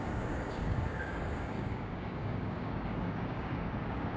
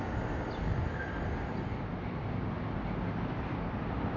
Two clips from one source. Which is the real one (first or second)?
second